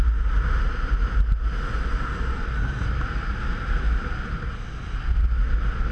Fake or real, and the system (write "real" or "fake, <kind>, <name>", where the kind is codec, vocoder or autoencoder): real